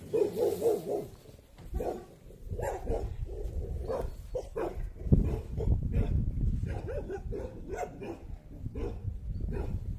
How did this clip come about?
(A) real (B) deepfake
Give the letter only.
A